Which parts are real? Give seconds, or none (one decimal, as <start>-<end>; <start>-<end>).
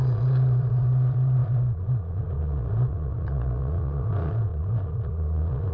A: none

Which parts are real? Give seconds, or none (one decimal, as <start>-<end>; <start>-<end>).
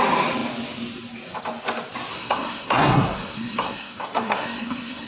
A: 0.0-2.1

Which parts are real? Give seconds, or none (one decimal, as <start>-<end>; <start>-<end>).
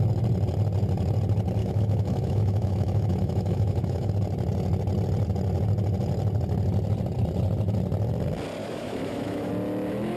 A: 0.0-1.6; 4.1-8.6; 9.5-10.2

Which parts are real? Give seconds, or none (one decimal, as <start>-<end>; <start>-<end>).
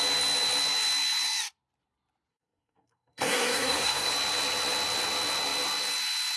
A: 0.0-2.3; 4.1-6.4